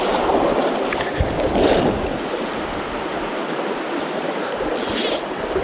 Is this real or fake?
real